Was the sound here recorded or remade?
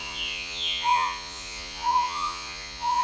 remade